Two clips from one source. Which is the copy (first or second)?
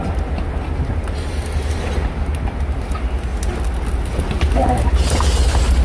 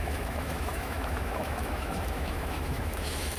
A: second